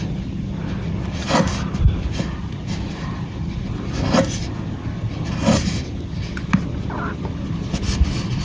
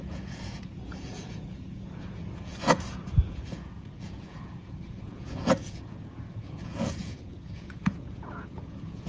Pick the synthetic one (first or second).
second